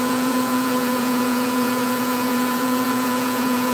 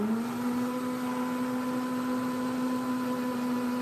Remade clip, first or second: first